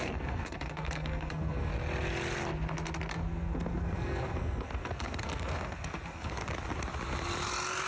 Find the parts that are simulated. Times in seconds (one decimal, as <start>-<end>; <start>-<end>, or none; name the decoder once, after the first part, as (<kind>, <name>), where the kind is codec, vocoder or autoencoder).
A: 0.0-1.7 (codec, SNAC); 3.1-6.4